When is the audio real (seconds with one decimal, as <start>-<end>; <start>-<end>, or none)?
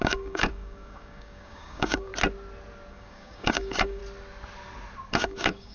2.1-2.9; 4.0-5.1